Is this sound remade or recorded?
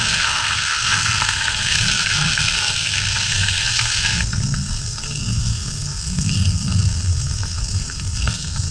remade